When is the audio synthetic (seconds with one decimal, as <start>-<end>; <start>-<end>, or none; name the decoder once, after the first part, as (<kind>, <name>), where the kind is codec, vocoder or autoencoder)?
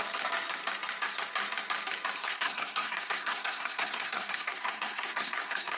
2.2-5.8 (codec, SNAC)